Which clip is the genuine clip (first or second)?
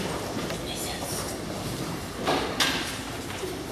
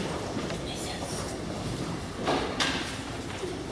first